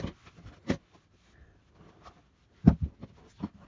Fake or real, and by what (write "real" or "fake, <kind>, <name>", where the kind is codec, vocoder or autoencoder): real